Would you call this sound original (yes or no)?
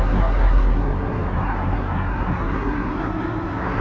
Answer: no